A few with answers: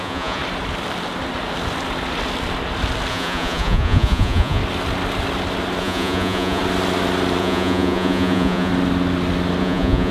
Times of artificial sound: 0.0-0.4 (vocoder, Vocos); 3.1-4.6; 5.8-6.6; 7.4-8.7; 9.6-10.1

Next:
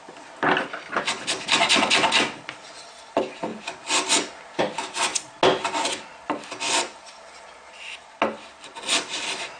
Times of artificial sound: none

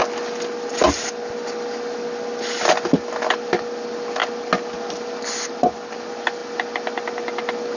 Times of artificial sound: none

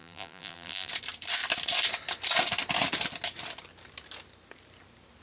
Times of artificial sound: 0.0-0.9 (vocoder, BigVGAN v2)

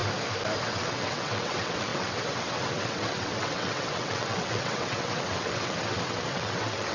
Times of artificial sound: 0.6-6.9 (vocoder, WaveNeXt)

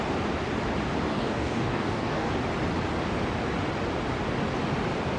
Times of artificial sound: 1.1-2.3 (codec, DAC)

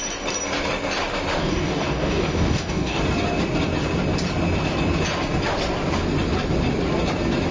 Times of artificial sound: 1.4-3.0 (codec, DAC)